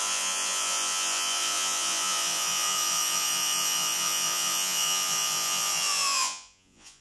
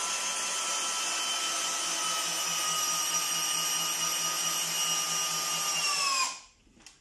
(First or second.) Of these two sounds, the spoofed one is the first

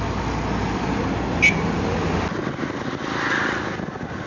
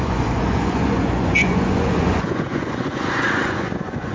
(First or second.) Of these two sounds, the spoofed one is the second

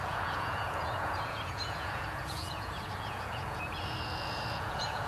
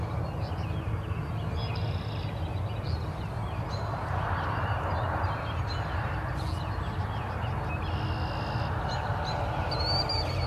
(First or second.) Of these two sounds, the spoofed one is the first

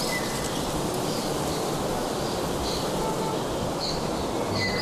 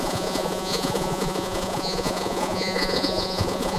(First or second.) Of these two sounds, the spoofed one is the second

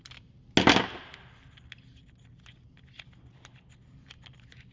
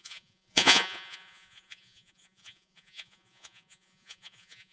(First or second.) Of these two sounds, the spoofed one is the second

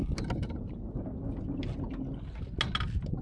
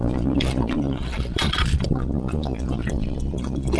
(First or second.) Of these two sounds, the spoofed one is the second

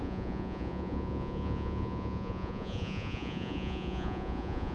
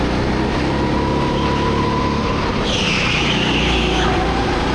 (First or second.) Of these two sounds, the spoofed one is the first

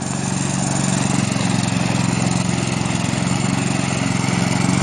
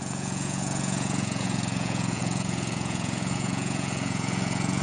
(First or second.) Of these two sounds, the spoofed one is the second